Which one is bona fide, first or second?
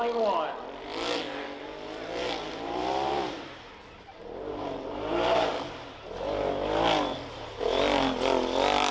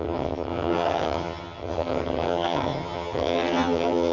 first